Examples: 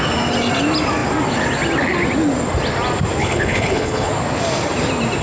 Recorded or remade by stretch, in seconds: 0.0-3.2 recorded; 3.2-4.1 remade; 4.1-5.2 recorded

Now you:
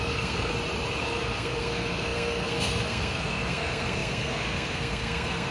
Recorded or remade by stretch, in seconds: 0.0-0.5 remade; 0.5-1.0 recorded; 1.0-5.5 remade

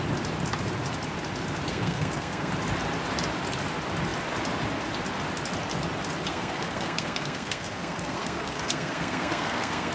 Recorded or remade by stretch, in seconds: 0.0-1.7 recorded; 1.7-2.5 remade; 2.5-6.3 recorded; 6.3-9.9 remade

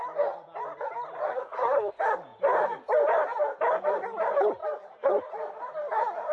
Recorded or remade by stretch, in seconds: 0.0-1.3 recorded; 1.3-1.9 remade; 1.9-6.3 recorded